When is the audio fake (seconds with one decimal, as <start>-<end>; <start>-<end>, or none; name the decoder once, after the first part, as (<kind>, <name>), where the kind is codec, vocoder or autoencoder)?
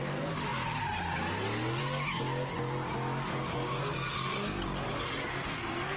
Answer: 3.9-4.6 (codec, SNAC); 5.3-6.0